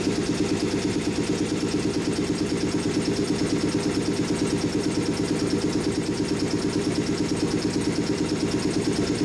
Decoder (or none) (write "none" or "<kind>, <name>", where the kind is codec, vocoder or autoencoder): none